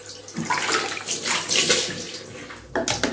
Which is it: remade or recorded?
recorded